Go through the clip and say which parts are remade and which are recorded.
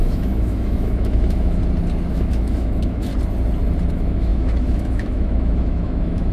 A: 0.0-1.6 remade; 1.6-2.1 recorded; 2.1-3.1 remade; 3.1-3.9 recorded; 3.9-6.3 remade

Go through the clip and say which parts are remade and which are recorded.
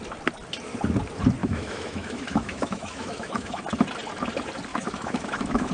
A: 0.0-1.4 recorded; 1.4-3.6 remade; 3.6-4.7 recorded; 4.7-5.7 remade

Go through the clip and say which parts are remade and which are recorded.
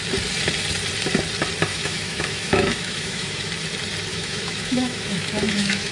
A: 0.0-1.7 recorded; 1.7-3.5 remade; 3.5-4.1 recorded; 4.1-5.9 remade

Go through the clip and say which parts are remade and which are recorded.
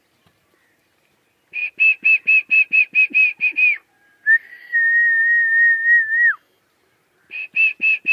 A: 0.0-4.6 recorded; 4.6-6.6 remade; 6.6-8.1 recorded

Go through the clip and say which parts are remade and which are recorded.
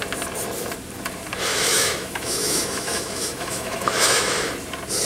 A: 0.0-1.5 recorded; 1.5-4.5 remade; 4.5-5.0 recorded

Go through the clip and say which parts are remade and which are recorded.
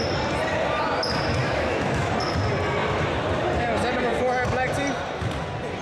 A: 0.0-1.4 recorded; 1.4-2.1 remade; 2.1-5.8 recorded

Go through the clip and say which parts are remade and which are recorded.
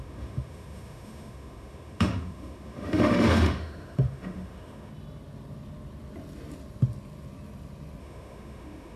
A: 0.0-4.9 remade; 4.9-8.0 recorded; 8.0-9.0 remade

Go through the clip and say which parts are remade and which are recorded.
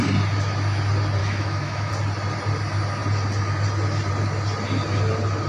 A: 0.0-1.2 recorded; 1.2-1.9 remade; 1.9-5.5 recorded